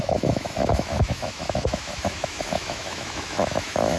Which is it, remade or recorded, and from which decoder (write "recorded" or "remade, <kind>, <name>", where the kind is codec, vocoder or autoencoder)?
remade, autoencoder, DAC-VAE